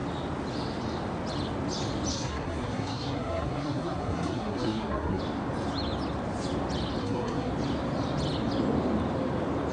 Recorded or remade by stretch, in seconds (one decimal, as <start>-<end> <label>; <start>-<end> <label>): 0.0-2.1 recorded; 2.1-5.2 remade; 5.2-7.0 recorded; 7.0-7.5 remade; 7.5-9.7 recorded